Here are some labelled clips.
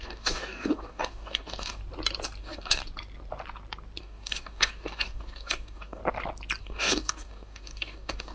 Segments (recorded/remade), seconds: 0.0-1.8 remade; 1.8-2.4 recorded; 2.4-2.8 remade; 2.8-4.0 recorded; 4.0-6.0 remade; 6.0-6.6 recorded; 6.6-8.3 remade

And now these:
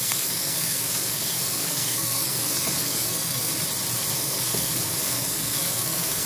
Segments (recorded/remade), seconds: 0.0-3.5 remade; 3.5-4.1 recorded; 4.1-6.3 remade

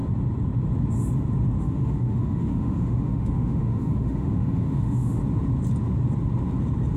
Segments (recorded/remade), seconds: 0.0-1.6 recorded; 1.6-5.2 remade; 5.2-7.0 recorded